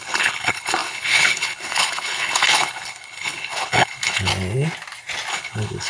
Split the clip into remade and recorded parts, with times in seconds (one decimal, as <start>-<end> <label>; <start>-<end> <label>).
0.0-4.3 remade; 4.3-5.3 recorded; 5.3-5.9 remade